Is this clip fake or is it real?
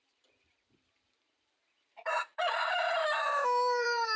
fake